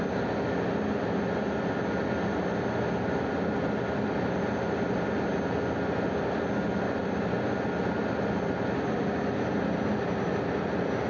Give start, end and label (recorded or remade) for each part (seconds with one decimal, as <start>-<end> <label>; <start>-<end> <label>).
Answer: 0.0-11.1 recorded